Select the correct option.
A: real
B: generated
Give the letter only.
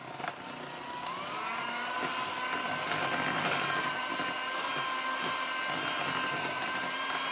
A